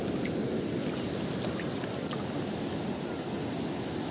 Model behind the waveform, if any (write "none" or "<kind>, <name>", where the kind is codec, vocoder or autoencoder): none